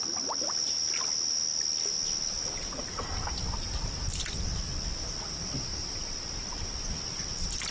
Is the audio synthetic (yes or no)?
no